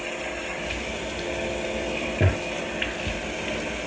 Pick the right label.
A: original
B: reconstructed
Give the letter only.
A